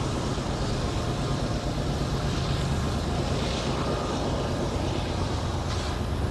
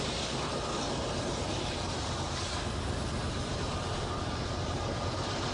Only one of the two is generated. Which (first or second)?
second